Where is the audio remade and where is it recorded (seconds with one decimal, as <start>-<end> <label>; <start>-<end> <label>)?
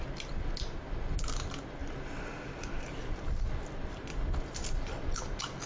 0.0-1.8 recorded; 1.8-5.2 remade; 5.2-5.7 recorded